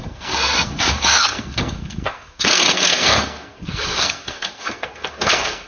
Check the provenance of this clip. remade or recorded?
remade